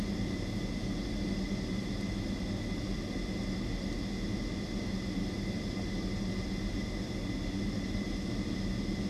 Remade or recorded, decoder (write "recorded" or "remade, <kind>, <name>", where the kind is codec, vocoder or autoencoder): recorded